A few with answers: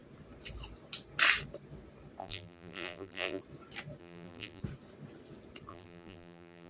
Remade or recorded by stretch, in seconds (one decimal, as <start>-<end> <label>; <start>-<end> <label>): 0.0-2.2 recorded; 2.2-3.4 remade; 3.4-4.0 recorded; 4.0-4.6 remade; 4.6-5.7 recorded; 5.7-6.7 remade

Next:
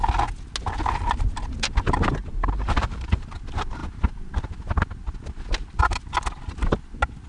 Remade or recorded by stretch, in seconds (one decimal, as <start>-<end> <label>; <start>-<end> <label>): 0.0-2.2 recorded; 2.2-3.3 remade; 3.3-7.3 recorded

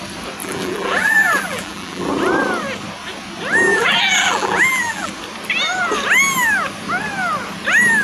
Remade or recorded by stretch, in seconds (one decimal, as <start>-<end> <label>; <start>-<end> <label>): 0.0-0.4 recorded; 0.4-2.1 remade; 2.1-3.7 recorded; 3.7-5.1 remade; 5.1-8.0 recorded